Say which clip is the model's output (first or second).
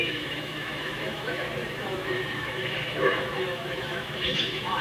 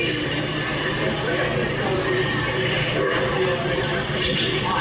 first